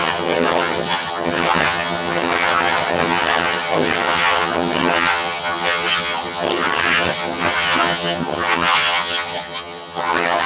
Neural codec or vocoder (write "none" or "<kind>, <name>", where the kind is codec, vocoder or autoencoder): vocoder, HiFi-GAN